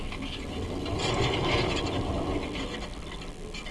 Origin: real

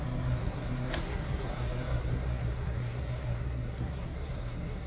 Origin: fake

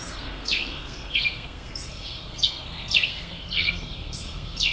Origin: fake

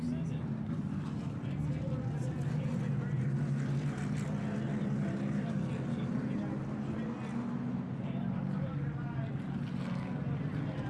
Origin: real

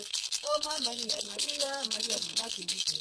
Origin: fake